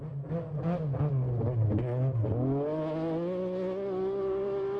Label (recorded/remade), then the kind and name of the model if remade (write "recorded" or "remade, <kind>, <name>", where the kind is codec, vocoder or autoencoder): recorded